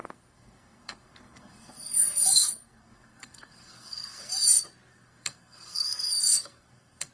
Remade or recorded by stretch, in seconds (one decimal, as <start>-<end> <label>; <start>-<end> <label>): 0.0-4.3 remade; 4.3-4.9 recorded; 4.9-7.1 remade